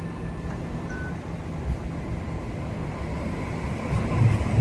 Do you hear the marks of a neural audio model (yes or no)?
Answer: no